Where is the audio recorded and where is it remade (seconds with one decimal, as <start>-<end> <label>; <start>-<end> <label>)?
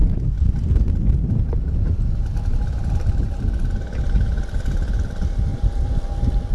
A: 0.0-3.4 remade; 3.4-5.5 recorded; 5.5-6.5 remade